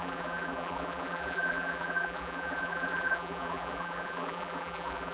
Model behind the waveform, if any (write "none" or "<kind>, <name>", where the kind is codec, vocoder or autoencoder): vocoder, BigVGAN v2